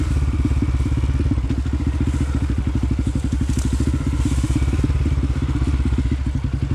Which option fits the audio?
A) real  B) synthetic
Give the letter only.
A